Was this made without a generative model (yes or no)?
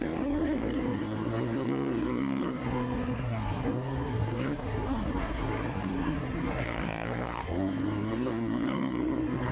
no